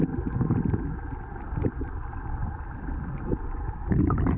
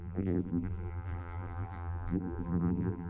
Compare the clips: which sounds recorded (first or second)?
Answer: first